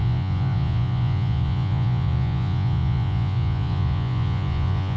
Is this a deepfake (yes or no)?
yes